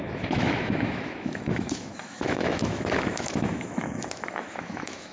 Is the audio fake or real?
fake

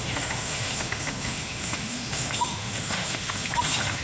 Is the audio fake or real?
fake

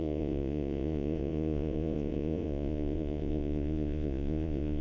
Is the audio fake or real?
fake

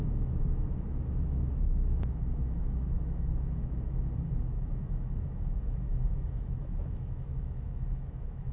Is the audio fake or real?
fake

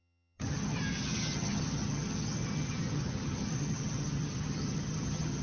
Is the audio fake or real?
fake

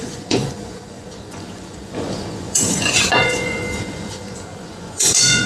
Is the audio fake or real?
fake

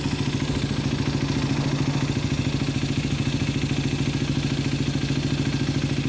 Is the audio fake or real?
real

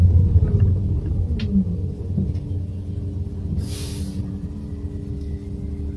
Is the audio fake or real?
real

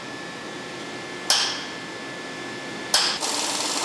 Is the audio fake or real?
real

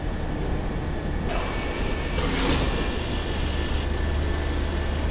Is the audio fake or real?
real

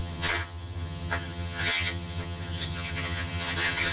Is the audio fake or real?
fake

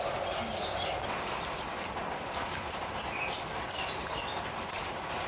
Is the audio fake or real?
real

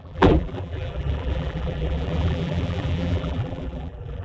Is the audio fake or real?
fake